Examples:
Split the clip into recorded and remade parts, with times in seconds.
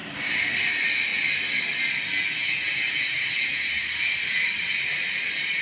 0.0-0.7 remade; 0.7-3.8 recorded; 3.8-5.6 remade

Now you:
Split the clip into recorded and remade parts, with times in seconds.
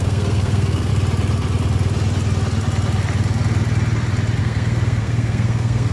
0.0-0.9 remade; 0.9-4.4 recorded; 4.4-5.9 remade